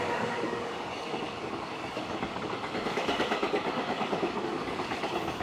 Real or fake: fake